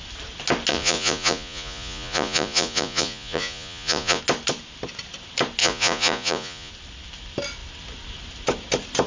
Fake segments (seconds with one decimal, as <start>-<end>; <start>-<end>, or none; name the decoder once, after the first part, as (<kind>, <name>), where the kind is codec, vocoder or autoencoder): 0.7-4.2 (vocoder, Vocos); 5.6-6.7